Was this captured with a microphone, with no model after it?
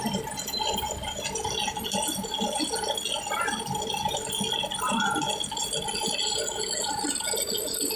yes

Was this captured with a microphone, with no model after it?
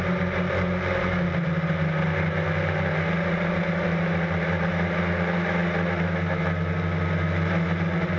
yes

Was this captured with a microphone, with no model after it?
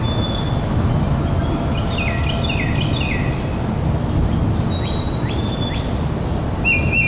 yes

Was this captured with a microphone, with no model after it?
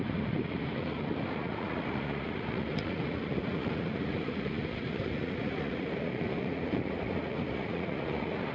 no